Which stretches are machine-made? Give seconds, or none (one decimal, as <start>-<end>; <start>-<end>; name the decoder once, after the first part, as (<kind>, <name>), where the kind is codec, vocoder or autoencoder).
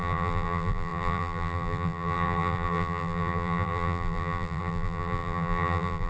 0.0-6.1 (vocoder, BigVGAN v2)